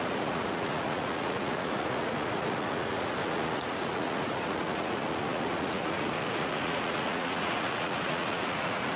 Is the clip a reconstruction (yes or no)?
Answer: yes